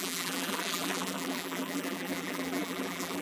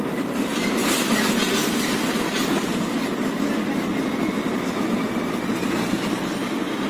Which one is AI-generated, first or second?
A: first